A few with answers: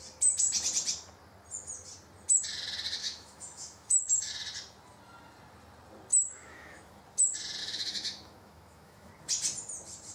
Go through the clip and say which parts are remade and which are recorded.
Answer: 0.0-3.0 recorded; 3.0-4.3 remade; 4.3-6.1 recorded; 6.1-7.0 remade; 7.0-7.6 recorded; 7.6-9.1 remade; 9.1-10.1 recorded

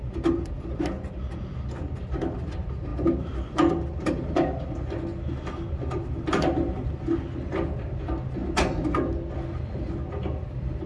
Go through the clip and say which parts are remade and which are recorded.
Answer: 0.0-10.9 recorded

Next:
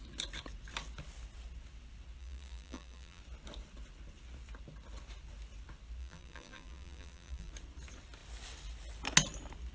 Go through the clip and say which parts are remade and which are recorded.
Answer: 0.0-2.2 recorded; 2.2-3.2 remade; 3.2-6.0 recorded; 6.0-7.5 remade; 7.5-9.7 recorded

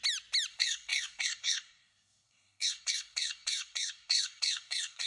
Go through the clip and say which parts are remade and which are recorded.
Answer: 0.0-0.5 recorded; 0.5-5.1 remade

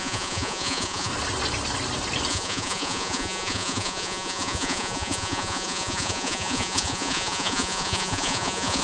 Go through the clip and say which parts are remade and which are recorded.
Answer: 0.0-1.1 remade; 1.1-2.3 recorded; 2.3-8.8 remade

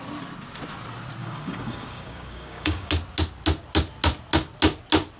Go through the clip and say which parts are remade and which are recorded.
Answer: 0.0-1.2 recorded; 1.2-2.9 remade; 2.9-5.2 recorded